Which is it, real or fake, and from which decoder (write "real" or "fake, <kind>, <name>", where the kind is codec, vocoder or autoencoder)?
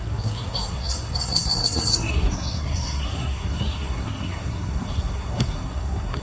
fake, codec, SNAC